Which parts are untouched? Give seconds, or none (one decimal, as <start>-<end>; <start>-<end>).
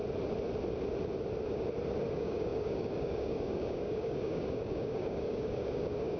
0.0-2.1